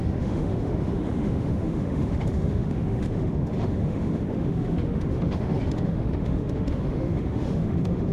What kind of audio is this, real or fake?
fake